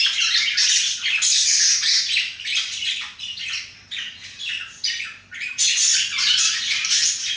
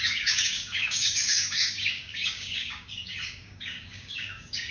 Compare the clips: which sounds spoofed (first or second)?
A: second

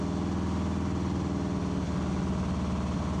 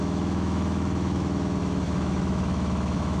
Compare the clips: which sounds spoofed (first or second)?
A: second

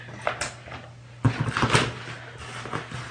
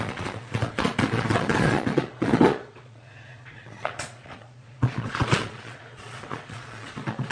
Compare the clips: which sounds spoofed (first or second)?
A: second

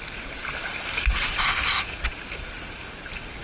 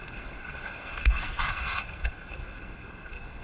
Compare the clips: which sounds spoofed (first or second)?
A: second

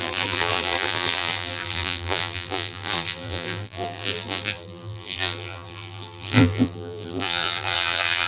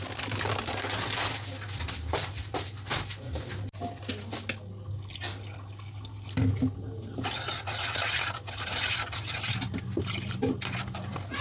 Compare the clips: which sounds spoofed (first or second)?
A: first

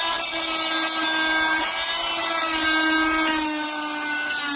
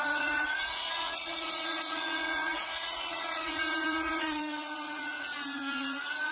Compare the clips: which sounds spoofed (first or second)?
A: second